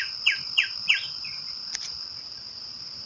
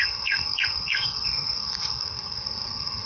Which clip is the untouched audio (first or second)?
first